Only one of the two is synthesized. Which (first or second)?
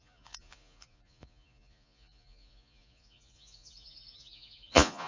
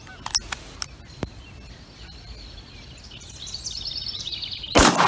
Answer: first